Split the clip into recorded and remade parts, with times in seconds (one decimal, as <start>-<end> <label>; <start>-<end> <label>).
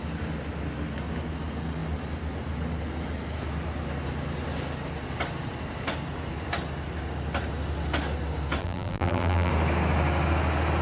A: 0.0-8.6 recorded; 8.6-9.5 remade; 9.5-10.8 recorded